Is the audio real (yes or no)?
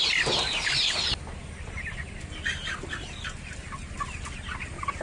yes